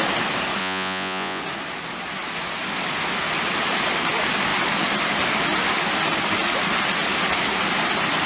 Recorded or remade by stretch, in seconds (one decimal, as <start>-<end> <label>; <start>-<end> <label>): 0.0-0.6 recorded; 0.6-1.4 remade; 1.4-8.3 recorded